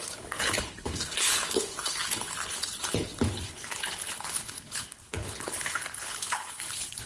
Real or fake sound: fake